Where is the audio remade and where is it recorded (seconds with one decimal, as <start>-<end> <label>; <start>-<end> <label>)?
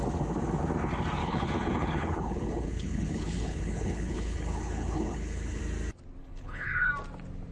0.0-1.2 recorded; 1.2-5.6 remade; 5.6-6.2 recorded; 6.2-6.9 remade; 6.9-7.5 recorded